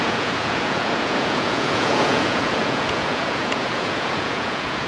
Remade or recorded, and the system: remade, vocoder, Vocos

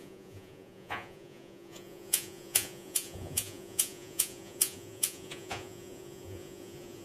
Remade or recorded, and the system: remade, vocoder, Vocos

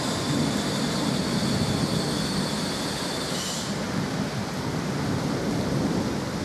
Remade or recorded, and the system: recorded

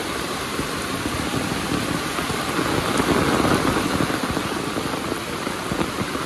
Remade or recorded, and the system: recorded